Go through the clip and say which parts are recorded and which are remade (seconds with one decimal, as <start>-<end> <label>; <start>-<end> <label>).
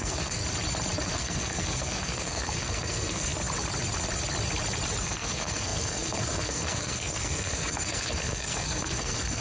0.0-0.4 remade; 0.4-1.1 recorded; 1.1-3.3 remade; 3.3-5.0 recorded; 5.0-9.4 remade